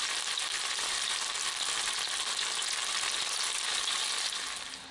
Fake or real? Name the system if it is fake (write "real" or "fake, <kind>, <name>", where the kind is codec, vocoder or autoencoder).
real